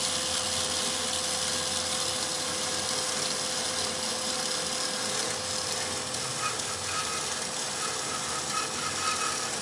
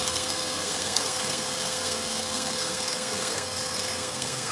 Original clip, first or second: first